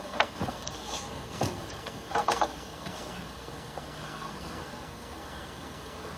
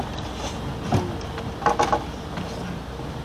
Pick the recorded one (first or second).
second